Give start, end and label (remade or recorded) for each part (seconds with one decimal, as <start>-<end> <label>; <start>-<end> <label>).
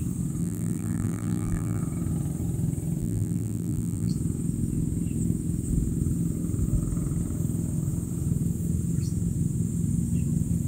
0.0-0.4 recorded; 0.4-1.8 remade; 1.8-3.0 recorded; 3.0-4.1 remade; 4.1-10.7 recorded